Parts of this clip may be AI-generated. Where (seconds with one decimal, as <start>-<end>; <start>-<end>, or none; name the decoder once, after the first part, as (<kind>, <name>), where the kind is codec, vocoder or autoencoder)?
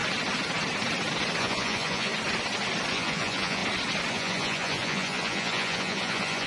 1.4-2.1 (vocoder, Vocos); 2.9-3.6; 4.1-6.5